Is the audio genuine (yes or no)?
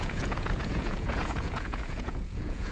no